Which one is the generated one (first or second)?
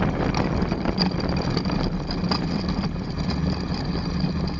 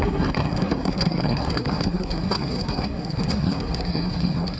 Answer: second